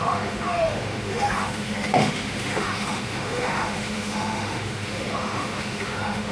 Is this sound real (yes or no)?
no